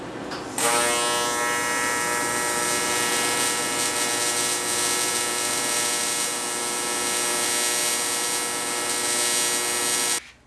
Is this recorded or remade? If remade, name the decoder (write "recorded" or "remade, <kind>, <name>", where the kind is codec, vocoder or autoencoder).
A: recorded